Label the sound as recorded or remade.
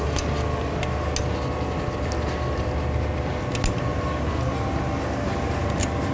recorded